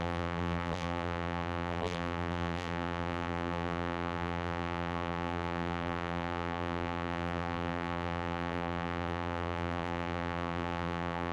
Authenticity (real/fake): fake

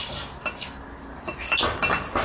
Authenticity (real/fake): real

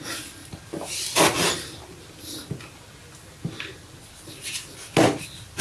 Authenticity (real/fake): real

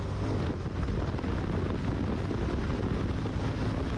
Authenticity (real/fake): real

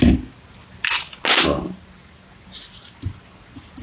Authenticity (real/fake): real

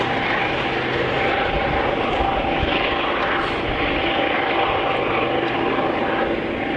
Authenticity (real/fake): real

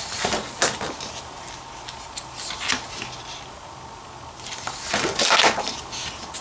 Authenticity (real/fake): real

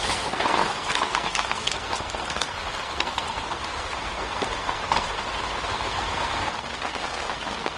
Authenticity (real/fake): fake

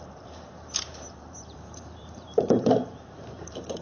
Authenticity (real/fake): fake